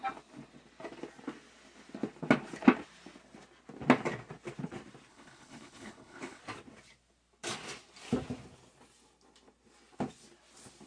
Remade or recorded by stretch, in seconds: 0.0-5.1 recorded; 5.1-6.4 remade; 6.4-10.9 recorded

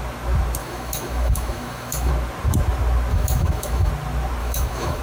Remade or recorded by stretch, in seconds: 0.0-0.6 recorded; 0.6-2.1 remade; 2.1-3.1 recorded; 3.1-3.9 remade; 3.9-4.4 recorded; 4.4-5.0 remade

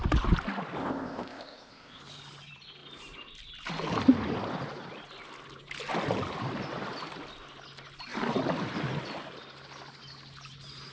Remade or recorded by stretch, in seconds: 0.0-0.8 recorded; 0.8-2.0 remade; 2.0-10.9 recorded

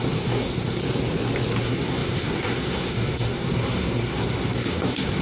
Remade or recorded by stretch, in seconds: 0.0-0.8 remade; 0.8-1.6 recorded; 1.6-5.2 remade